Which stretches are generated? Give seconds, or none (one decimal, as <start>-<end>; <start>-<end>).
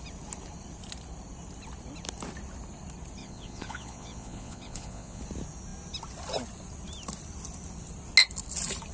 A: 3.2-5.2